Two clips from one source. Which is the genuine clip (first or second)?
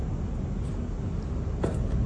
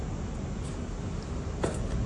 first